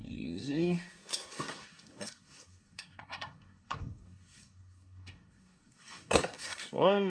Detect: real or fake fake